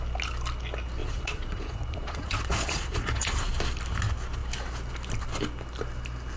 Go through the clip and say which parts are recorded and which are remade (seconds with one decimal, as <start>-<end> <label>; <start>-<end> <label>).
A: 0.0-1.0 recorded; 1.0-3.5 remade; 3.5-6.4 recorded